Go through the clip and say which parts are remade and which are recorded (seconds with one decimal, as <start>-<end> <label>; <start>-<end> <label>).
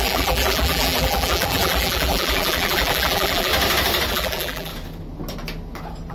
0.0-3.5 remade; 3.5-4.1 recorded; 4.1-4.7 remade; 4.7-6.1 recorded